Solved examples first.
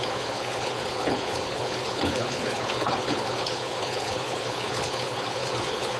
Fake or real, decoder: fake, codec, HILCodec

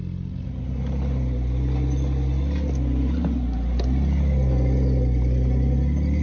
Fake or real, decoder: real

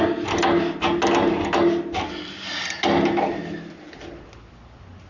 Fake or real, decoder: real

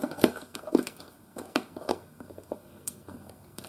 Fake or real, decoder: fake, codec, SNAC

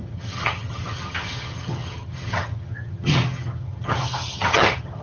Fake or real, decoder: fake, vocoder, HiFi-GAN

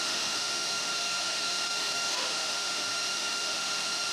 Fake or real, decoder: fake, autoencoder, DAC-VAE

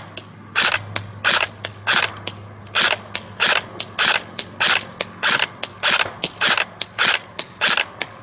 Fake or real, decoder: real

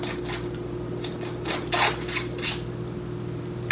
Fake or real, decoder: real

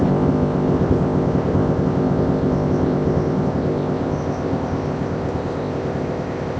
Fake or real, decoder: fake, codec, ZipCodec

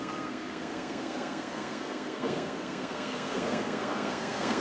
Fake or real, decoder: fake, codec, SNAC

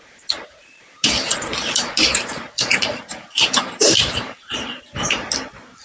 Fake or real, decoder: fake, vocoder, BigVGAN v2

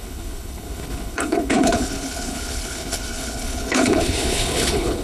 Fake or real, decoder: fake, codec, HILCodec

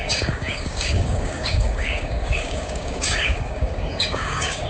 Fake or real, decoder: fake, codec, DAC